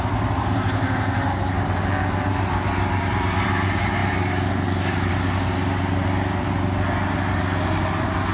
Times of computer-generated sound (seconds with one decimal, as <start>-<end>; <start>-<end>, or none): none